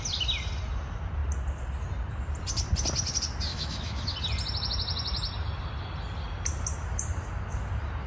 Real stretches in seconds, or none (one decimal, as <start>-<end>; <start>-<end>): 0.0-3.5; 4.1-8.1